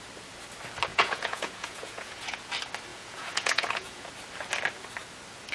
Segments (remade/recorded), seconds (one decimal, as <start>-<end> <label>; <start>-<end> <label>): 0.0-0.9 recorded; 0.9-2.4 remade; 2.4-2.9 recorded; 2.9-4.1 remade; 4.1-5.5 recorded